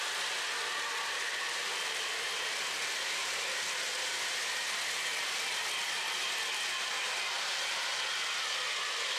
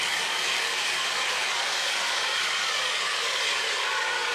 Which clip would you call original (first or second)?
first